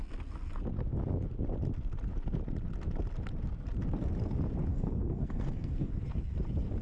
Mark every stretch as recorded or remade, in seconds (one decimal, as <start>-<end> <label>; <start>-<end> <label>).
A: 0.0-4.7 recorded; 4.7-5.9 remade; 5.9-6.8 recorded